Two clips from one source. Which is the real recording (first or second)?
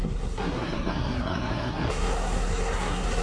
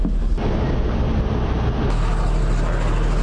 second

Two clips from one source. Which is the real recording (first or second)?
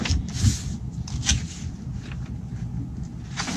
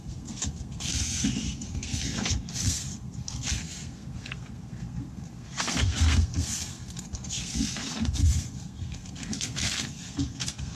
first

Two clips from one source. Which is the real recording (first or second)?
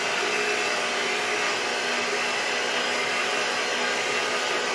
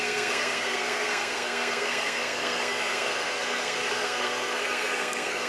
first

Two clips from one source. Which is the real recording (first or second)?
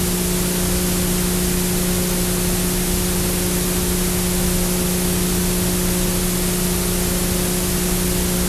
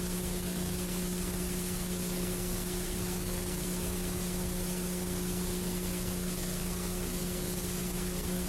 first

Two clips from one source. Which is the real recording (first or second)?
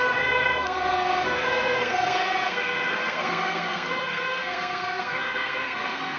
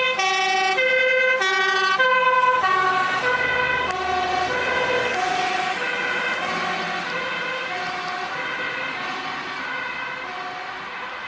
second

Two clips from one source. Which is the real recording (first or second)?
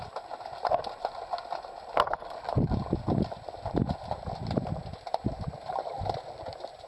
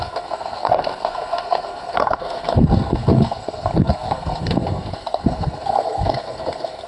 first